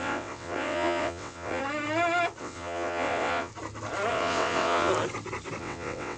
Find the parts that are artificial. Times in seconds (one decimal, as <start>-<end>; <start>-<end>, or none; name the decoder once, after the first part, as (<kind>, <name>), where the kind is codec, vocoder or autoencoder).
0.0-1.6 (vocoder, WaveNeXt); 2.4-3.5; 4.1-4.9; 5.6-6.2